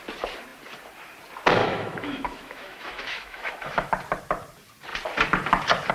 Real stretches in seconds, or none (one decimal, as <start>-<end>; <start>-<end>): 0.0-1.6; 3.9-5.9